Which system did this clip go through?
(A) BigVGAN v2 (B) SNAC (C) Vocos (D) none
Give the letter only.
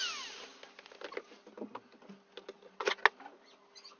D